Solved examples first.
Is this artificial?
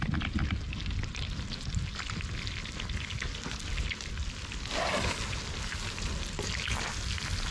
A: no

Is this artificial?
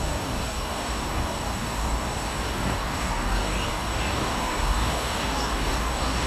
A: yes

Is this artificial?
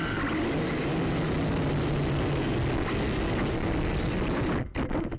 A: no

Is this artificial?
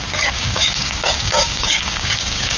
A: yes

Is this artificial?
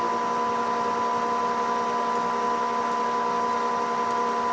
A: no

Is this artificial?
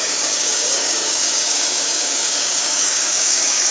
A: yes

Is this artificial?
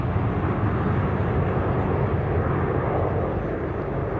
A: no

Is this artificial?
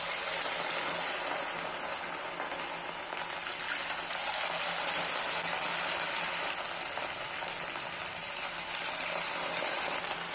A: no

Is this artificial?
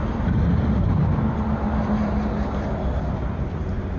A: no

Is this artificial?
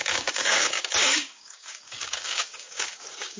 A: yes